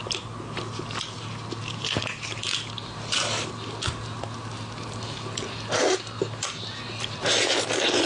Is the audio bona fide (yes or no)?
yes